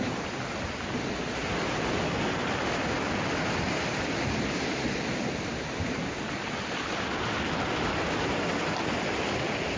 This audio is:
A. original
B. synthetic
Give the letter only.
A